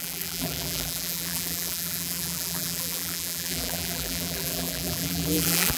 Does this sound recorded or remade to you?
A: remade